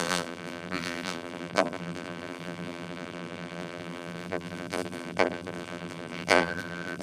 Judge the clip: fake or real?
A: fake